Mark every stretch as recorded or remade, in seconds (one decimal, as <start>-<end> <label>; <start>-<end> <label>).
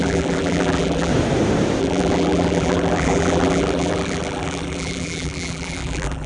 0.0-1.1 remade; 1.1-1.8 recorded; 1.8-6.3 remade